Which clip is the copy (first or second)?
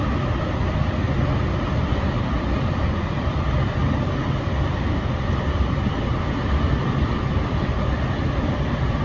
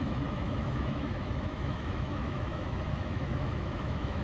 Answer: second